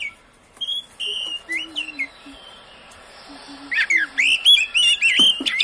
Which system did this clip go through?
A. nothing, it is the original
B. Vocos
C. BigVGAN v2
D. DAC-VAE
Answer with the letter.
A